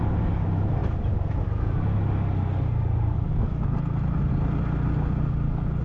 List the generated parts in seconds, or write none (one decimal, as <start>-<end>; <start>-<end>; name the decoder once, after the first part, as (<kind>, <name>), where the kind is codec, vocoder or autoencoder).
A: none